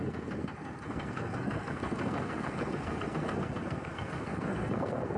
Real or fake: fake